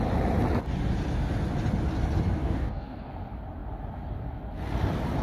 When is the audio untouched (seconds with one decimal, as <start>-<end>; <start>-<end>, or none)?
0.0-2.4; 3.1-5.2